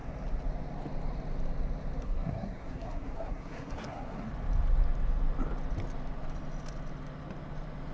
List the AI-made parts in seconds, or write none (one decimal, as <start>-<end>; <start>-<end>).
2.0-4.3

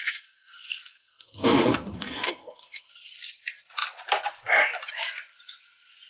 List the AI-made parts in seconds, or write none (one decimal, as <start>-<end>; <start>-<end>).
0.0-2.9

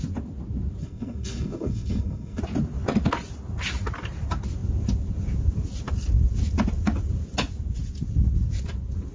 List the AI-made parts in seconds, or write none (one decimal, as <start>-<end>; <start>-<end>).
0.8-2.4